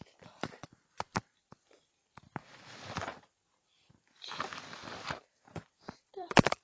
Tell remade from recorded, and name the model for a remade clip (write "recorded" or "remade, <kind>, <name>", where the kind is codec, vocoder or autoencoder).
remade, vocoder, BigVGAN v2